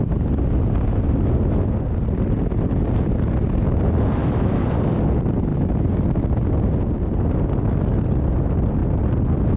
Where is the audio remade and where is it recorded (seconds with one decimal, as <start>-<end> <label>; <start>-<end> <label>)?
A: 0.0-4.2 recorded; 4.2-4.7 remade; 4.7-9.6 recorded